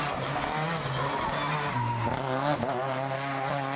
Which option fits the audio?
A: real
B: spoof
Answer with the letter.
A